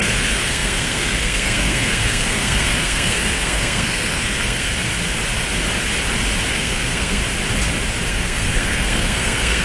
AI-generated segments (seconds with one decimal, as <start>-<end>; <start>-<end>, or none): 0.0-4.9; 6.5-7.2; 8.1-9.6